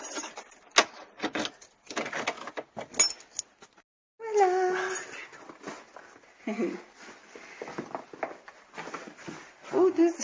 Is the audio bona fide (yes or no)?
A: yes